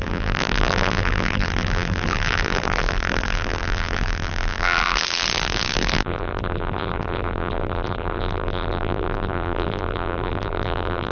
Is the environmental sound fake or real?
fake